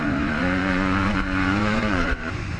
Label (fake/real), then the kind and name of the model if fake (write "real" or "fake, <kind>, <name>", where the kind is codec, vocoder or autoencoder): fake, vocoder, Vocos